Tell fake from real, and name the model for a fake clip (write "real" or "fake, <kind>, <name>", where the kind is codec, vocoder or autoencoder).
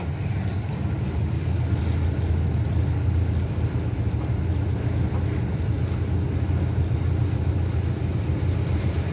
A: real